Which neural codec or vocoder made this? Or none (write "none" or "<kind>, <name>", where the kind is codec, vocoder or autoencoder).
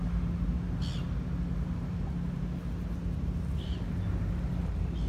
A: none